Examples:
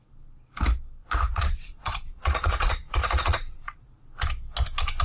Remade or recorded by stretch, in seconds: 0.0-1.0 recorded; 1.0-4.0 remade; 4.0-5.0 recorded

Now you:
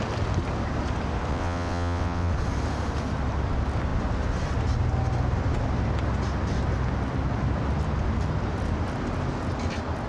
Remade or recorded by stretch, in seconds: 0.0-1.3 recorded; 1.3-2.3 remade; 2.3-10.1 recorded

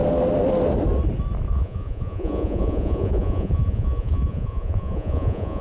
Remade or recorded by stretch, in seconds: 0.0-1.5 recorded; 1.5-5.6 remade

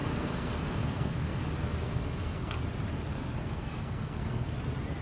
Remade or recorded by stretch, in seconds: 0.0-1.4 remade; 1.4-1.8 recorded; 1.8-2.6 remade; 2.6-3.1 recorded; 3.1-4.5 remade; 4.5-5.0 recorded

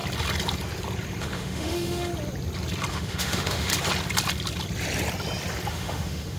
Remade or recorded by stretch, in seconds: 0.0-1.2 recorded; 1.2-2.1 remade; 2.1-2.9 recorded; 2.9-3.7 remade; 3.7-5.7 recorded; 5.7-6.4 remade

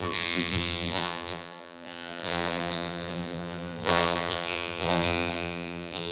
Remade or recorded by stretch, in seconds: 0.0-6.1 remade